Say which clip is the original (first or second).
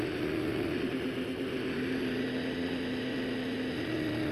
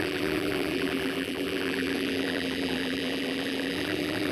first